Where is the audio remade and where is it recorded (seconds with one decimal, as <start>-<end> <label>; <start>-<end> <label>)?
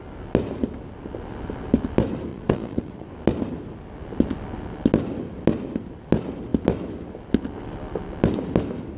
0.0-2.3 recorded; 2.3-3.1 remade; 3.1-9.0 recorded